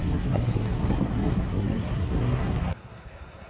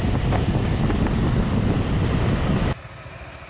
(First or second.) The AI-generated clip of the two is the first